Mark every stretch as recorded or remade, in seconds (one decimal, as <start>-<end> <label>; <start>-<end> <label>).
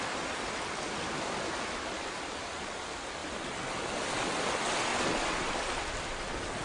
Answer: 0.0-6.6 recorded